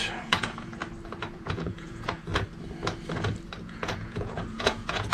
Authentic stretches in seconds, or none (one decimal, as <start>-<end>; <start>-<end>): 0.8-1.3; 2.3-3.6